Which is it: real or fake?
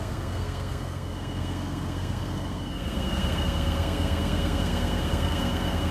fake